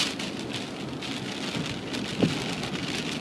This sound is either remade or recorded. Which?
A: recorded